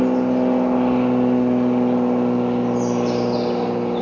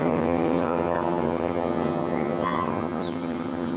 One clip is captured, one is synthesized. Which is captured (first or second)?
first